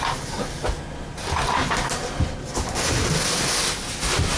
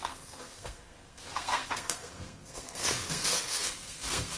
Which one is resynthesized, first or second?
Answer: second